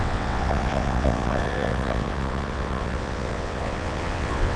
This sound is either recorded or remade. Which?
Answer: remade